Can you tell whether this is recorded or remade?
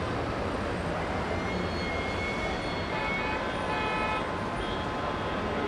recorded